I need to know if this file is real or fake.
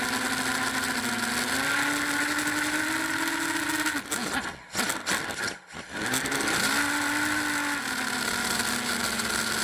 real